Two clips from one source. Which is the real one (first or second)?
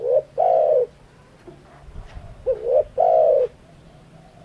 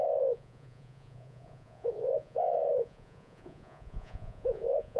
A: first